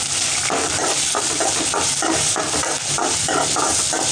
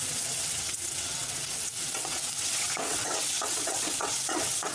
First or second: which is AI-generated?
second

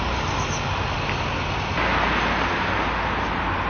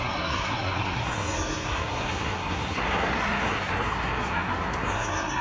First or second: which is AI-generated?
second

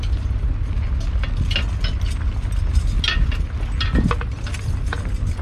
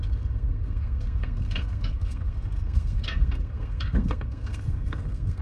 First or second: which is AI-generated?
second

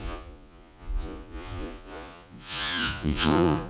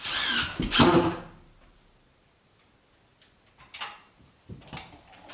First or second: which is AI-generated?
first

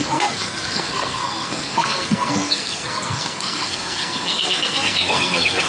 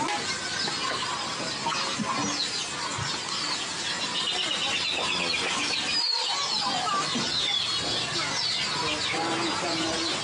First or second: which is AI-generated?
first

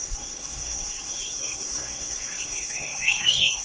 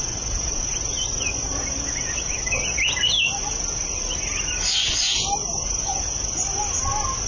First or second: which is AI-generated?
first